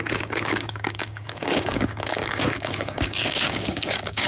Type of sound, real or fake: fake